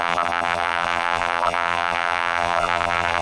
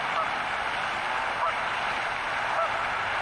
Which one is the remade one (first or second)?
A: first